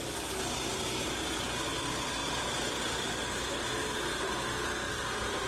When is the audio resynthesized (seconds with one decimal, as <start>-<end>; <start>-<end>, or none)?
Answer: none